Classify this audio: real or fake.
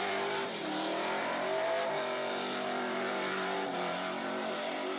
fake